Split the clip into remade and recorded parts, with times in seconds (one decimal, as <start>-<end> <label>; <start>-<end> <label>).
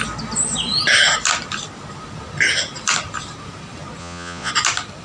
0.0-4.0 recorded; 4.0-4.5 remade; 4.5-5.0 recorded